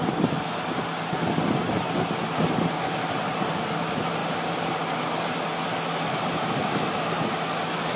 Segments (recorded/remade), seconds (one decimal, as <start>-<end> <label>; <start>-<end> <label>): 0.0-8.0 recorded